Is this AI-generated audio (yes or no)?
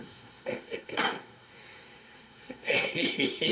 yes